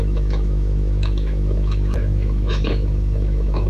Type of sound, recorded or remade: remade